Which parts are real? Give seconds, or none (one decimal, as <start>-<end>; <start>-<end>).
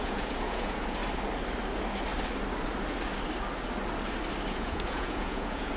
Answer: 1.0-4.5